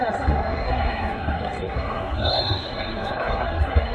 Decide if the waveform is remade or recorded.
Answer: remade